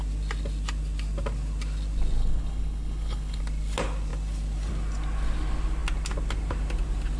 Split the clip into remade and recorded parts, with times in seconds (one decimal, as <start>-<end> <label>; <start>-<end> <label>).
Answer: 0.0-2.2 recorded; 2.2-3.4 remade; 3.4-7.2 recorded